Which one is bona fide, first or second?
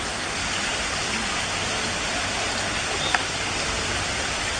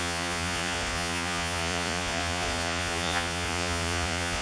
first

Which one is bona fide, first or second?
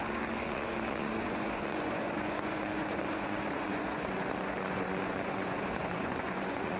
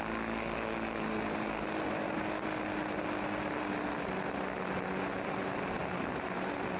second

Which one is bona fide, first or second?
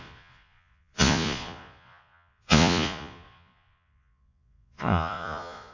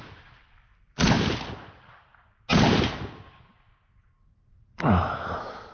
second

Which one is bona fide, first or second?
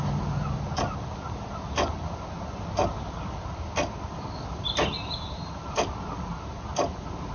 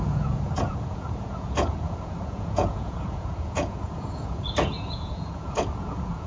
first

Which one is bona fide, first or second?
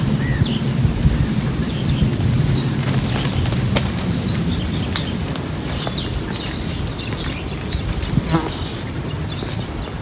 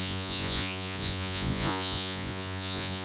first